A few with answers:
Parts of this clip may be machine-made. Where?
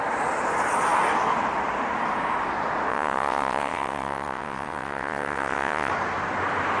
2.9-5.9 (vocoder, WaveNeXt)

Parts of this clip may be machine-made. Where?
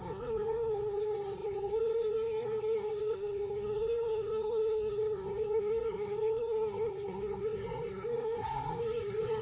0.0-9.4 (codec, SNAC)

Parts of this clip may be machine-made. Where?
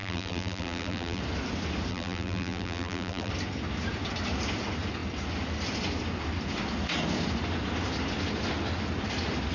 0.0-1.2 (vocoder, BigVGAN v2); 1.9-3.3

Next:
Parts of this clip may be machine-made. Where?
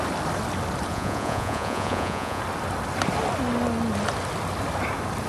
0.9-2.4 (vocoder, Vocos)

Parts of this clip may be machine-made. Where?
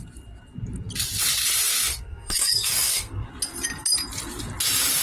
1.9-3.3 (codec, SNAC)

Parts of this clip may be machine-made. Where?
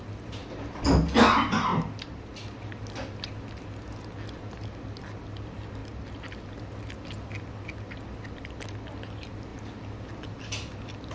none